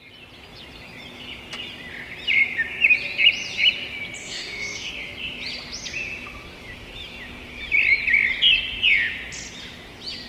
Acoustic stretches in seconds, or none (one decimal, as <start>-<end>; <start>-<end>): 0.0-4.2; 4.9-10.3